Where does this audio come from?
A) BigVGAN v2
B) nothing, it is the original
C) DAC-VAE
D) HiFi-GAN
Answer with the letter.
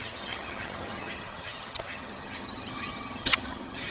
D